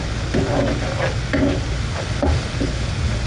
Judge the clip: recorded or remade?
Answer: recorded